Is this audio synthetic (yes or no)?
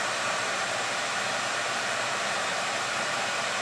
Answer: yes